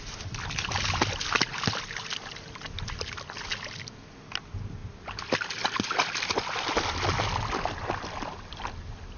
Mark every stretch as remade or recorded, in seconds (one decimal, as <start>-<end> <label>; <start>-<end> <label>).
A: 0.0-9.2 recorded